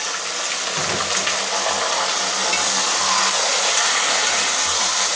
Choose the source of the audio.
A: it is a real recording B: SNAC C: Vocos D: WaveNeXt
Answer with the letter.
A